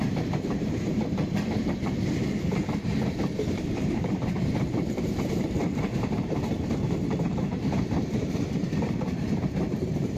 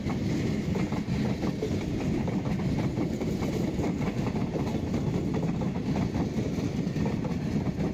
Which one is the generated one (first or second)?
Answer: first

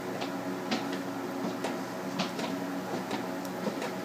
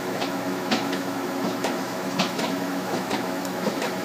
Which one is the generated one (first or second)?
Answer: second